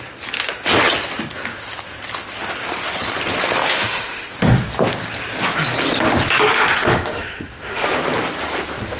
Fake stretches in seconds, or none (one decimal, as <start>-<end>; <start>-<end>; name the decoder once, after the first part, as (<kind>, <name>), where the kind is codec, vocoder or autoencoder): 3.6-4.3 (autoencoder, DAC-VAE); 6.5-7.9